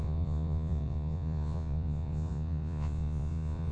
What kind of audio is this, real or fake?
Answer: fake